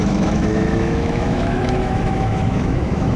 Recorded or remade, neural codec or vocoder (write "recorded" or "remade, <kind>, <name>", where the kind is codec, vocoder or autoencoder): remade, autoencoder, DAC-VAE